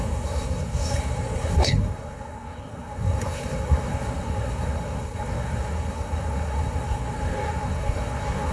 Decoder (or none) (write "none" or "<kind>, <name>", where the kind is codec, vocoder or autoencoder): codec, SNAC